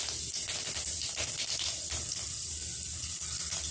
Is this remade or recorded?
recorded